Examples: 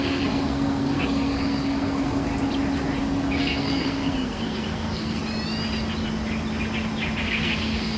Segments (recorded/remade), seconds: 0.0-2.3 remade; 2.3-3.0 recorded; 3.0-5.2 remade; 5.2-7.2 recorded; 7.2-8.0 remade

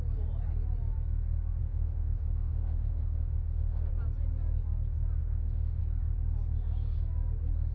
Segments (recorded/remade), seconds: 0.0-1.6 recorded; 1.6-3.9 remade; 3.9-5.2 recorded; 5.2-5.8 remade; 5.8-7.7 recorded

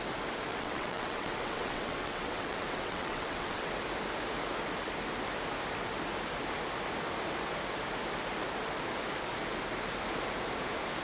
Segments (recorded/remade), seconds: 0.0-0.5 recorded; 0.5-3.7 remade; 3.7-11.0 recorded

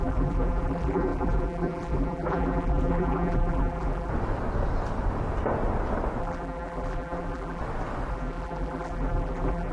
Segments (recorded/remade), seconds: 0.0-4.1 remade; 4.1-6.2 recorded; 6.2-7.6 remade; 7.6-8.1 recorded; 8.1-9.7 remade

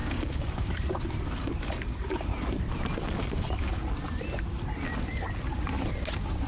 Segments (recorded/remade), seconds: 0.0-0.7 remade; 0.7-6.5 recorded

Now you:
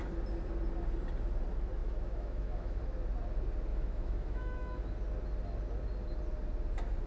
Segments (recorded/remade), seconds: 0.0-1.8 recorded; 1.8-2.8 remade; 2.8-3.7 recorded; 3.7-4.8 remade; 4.8-7.1 recorded

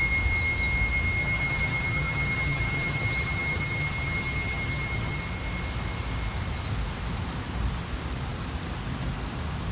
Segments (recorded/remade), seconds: 0.0-1.2 recorded; 1.2-5.2 remade; 5.2-9.7 recorded